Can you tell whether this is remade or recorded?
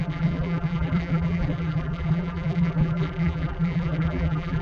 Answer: remade